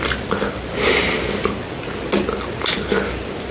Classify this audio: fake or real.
real